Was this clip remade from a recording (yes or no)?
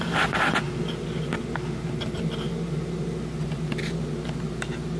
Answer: no